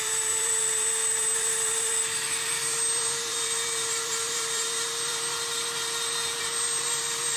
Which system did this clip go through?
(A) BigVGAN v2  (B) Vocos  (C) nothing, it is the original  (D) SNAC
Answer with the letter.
A